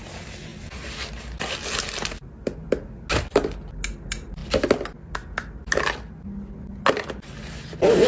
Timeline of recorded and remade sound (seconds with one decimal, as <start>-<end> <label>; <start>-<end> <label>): 0.0-8.1 recorded